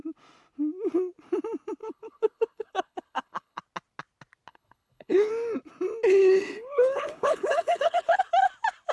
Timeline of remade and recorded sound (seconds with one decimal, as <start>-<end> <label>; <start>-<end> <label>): 0.0-1.8 recorded; 1.8-3.6 remade; 3.6-4.5 recorded; 4.5-5.3 remade; 5.3-6.2 recorded; 6.2-8.2 remade; 8.2-8.9 recorded